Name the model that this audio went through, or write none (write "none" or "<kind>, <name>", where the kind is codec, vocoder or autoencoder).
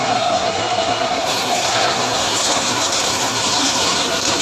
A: codec, SNAC